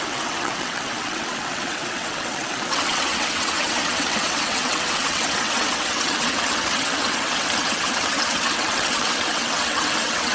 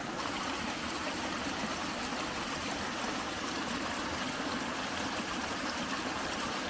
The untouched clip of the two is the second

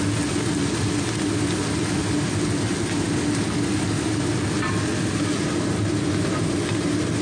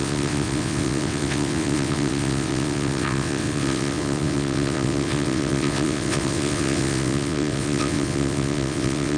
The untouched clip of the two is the first